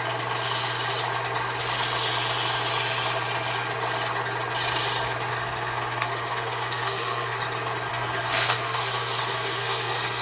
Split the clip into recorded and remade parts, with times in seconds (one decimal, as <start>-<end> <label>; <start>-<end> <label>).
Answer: 0.0-5.3 recorded; 5.3-7.4 remade; 7.4-7.9 recorded; 7.9-10.2 remade